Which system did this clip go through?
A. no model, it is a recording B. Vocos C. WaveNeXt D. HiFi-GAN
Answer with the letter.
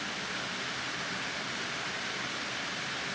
A